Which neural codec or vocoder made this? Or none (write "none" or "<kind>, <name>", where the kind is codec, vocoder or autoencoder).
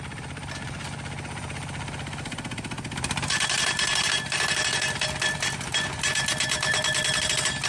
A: vocoder, BigVGAN v2